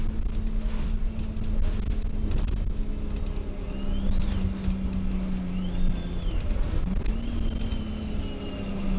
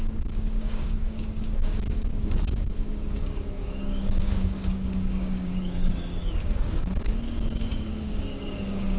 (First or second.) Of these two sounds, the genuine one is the first